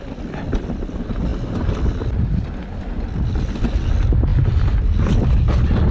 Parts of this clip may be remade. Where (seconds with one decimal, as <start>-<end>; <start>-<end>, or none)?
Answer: none